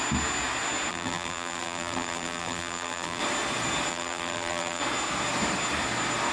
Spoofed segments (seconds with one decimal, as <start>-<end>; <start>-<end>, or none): 0.9-3.2; 3.9-4.8